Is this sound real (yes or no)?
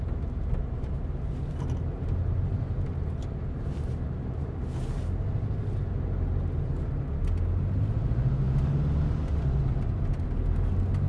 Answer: yes